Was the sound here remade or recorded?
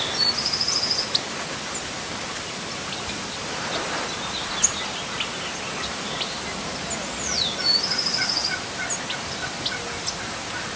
recorded